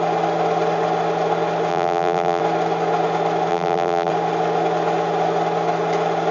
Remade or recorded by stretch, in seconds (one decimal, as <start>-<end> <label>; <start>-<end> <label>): 0.0-1.7 recorded; 1.7-2.4 remade; 2.4-3.5 recorded; 3.5-4.1 remade; 4.1-6.3 recorded